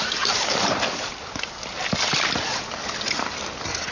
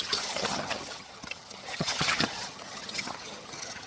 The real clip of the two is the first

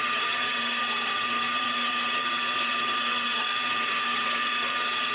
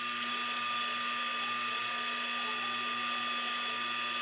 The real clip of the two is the second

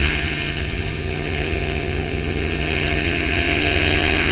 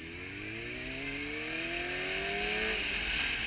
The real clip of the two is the second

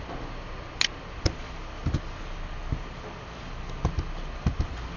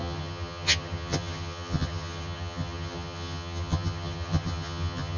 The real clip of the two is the first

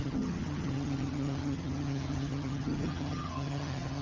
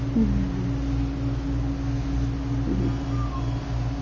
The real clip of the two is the second